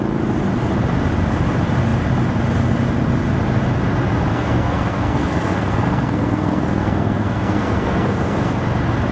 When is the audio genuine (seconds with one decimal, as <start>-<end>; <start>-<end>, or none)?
0.0-4.3; 8.6-9.1